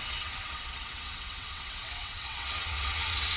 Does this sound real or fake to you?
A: fake